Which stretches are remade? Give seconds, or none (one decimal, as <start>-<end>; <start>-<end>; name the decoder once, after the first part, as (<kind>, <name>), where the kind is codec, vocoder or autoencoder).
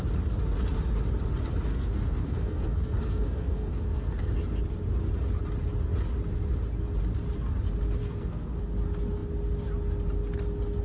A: 1.7-4.3 (codec, SNAC); 8.0-8.6